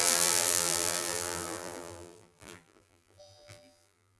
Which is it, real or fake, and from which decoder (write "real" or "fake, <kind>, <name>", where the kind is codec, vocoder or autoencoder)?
fake, vocoder, BigVGAN v2